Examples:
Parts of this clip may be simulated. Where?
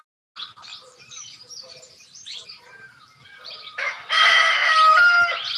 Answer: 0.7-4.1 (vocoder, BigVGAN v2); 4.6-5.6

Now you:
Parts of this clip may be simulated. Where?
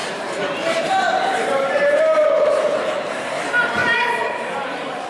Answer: 0.0-3.1 (vocoder, BigVGAN v2); 3.8-4.6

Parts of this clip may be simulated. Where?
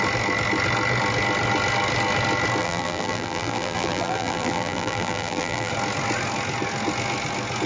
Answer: 2.6-5.7 (vocoder, BigVGAN v2)